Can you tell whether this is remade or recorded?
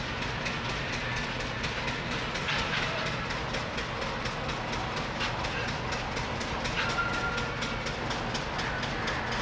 recorded